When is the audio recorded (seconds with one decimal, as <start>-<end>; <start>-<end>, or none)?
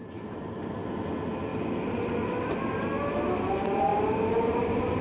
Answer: 0.9-3.9